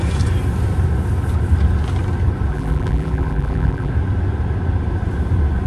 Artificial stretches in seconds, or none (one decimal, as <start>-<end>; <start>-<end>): 2.5-3.9

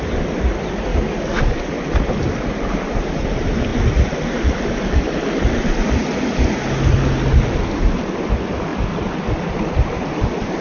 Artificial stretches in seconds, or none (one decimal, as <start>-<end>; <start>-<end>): 0.9-1.7

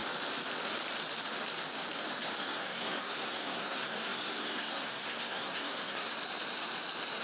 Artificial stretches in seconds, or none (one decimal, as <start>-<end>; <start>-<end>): 2.4-6.1